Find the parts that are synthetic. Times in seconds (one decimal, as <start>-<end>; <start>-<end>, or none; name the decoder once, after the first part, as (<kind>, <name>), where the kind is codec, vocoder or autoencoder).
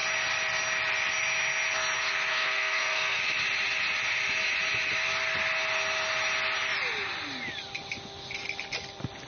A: 2.3-3.2 (codec, SNAC)